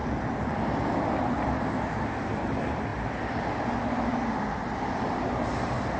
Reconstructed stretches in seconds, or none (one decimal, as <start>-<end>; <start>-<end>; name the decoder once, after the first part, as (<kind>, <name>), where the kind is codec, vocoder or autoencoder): none